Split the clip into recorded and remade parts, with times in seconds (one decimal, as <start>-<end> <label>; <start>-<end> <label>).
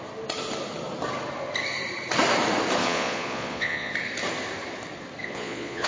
0.0-2.8 recorded; 2.8-3.9 remade; 3.9-5.2 recorded; 5.2-5.9 remade